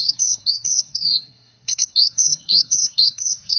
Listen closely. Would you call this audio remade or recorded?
remade